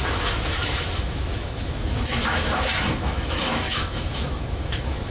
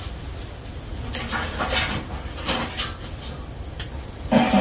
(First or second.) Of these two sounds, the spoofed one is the first